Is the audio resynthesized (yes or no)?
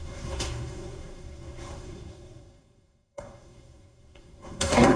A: yes